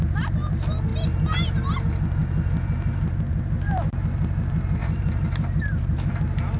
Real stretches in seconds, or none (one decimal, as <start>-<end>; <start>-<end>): 0.0-4.8; 6.1-6.6